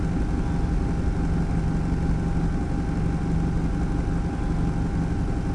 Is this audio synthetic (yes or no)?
no